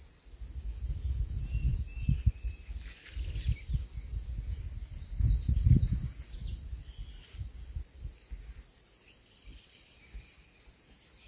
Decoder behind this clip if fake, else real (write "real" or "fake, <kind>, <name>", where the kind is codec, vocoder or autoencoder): real